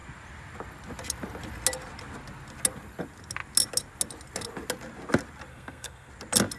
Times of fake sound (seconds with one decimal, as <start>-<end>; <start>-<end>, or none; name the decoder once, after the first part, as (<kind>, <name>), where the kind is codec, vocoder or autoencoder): 5.5-6.1 (codec, SNAC)